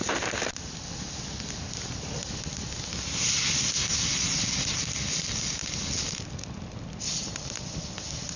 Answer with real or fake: real